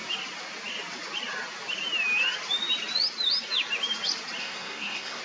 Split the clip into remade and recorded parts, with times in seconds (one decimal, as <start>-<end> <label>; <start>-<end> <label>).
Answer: 0.0-4.4 recorded; 4.4-5.2 remade